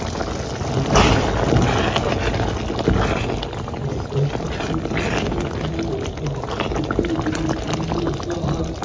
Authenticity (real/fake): real